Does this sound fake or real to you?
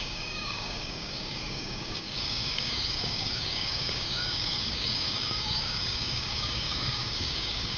fake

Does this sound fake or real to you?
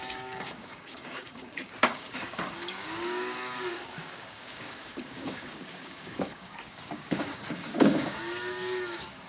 fake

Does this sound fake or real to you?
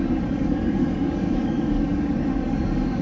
fake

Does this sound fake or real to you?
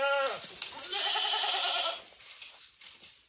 real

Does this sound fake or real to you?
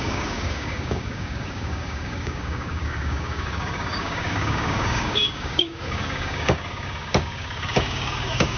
fake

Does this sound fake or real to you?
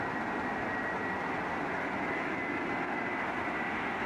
real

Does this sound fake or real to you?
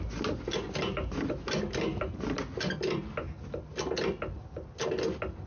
real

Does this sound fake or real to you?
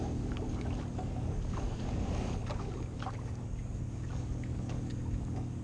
fake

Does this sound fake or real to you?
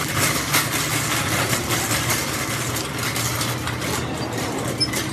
real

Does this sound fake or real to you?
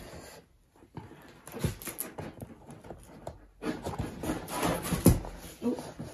real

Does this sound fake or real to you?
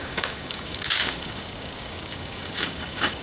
fake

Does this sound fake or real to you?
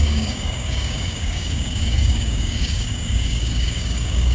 fake